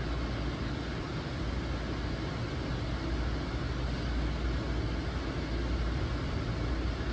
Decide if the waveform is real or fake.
real